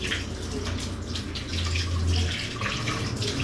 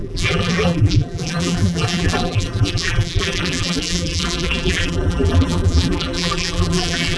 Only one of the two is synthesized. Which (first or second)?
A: second